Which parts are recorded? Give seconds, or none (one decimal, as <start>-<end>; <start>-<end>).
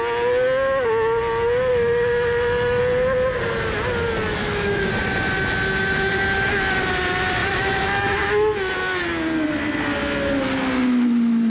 0.0-1.7; 2.8-4.4; 4.9-7.4; 8.7-11.5